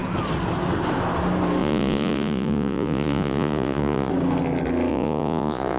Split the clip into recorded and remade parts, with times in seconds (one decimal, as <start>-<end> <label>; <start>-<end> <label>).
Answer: 0.0-1.6 recorded; 1.6-4.1 remade; 4.1-4.9 recorded; 4.9-5.8 remade